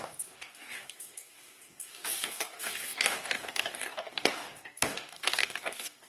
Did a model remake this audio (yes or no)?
yes